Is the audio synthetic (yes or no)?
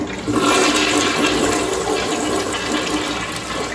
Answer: no